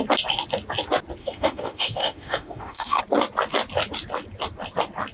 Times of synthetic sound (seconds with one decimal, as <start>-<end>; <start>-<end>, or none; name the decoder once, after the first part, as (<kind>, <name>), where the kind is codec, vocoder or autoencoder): 1.2-3.0 (autoencoder, DAC-VAE)